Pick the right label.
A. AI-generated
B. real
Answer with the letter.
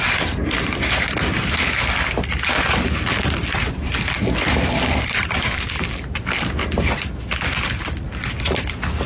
B